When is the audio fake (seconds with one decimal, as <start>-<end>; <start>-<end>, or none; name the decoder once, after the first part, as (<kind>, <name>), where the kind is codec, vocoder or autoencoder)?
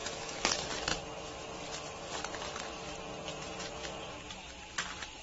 0.0-0.5 (codec, DAC)